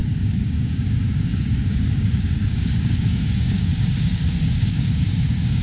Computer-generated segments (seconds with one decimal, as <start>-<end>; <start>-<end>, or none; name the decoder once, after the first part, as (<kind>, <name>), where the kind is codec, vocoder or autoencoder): 0.0-5.6 (codec, DAC)